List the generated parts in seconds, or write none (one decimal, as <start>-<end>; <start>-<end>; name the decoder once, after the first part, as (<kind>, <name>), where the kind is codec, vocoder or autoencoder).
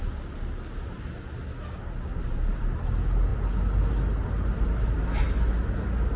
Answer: none